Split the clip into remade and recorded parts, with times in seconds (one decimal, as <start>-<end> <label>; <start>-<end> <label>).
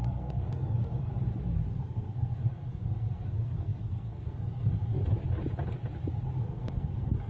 0.0-1.1 remade; 1.1-1.7 recorded; 1.7-5.0 remade; 5.0-6.4 recorded; 6.4-7.3 remade